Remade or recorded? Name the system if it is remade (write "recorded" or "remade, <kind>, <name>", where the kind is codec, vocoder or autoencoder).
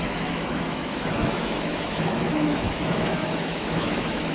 remade, autoencoder, DAC-VAE